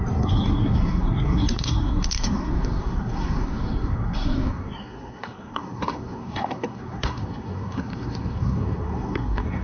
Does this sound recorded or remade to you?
remade